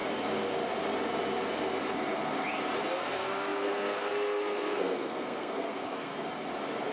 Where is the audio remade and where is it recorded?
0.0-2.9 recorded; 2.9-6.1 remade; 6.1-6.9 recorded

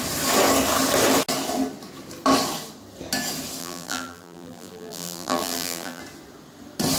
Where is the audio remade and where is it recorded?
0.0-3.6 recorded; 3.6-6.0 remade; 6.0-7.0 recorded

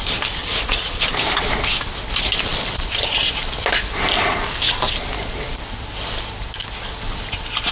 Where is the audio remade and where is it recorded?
0.0-0.4 recorded; 0.4-1.0 remade; 1.0-7.7 recorded